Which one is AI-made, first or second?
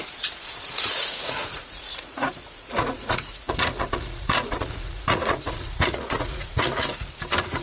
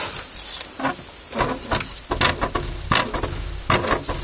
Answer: first